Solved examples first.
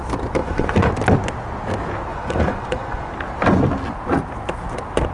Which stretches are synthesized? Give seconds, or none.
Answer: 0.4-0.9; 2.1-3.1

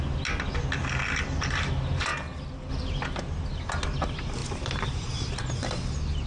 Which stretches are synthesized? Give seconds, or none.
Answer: 4.4-5.1

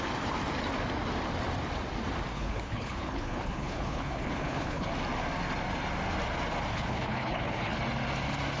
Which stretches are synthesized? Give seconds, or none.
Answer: 2.3-4.9; 6.7-7.8